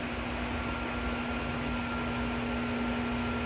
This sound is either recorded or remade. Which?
recorded